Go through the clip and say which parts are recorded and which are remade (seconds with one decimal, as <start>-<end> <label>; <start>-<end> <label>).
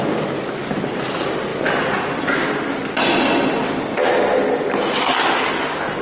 0.0-6.0 recorded